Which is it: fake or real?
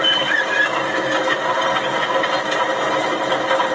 real